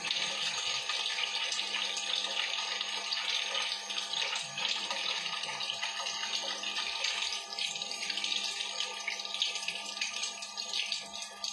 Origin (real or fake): real